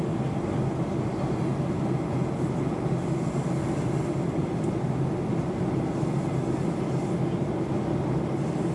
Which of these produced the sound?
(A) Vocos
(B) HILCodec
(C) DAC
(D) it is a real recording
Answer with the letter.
D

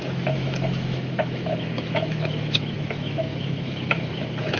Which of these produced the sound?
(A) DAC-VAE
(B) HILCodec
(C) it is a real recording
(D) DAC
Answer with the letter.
A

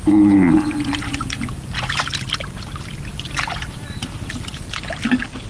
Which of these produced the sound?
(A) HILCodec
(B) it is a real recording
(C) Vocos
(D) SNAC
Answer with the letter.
B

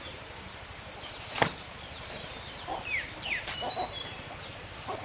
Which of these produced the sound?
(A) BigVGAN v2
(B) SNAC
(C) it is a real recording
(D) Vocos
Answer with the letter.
A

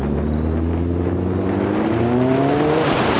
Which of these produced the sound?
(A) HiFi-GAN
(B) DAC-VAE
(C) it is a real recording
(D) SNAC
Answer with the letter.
C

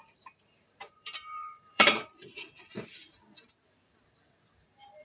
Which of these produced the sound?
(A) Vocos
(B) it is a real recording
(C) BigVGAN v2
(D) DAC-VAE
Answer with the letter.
C